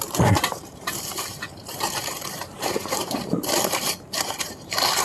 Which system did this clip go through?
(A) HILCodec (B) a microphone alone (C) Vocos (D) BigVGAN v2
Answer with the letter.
D